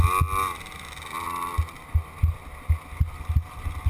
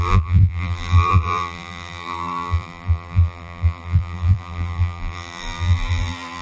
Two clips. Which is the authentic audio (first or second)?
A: first